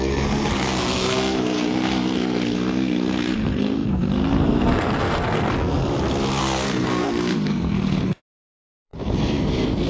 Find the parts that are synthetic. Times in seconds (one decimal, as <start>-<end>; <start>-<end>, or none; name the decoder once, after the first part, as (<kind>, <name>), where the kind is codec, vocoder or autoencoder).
0.0-5.8 (codec, SNAC); 6.4-9.9